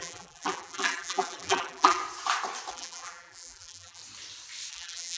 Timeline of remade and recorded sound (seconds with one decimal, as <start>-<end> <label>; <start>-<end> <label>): 0.0-2.0 remade; 2.0-2.7 recorded; 2.7-4.0 remade; 4.0-4.7 recorded; 4.7-5.2 remade